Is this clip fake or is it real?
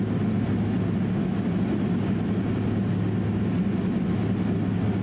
real